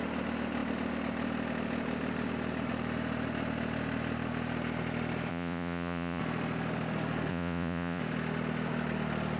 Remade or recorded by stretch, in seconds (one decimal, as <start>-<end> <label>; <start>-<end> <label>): 0.0-5.3 recorded; 5.3-6.2 remade; 6.2-7.3 recorded; 7.3-8.0 remade; 8.0-9.4 recorded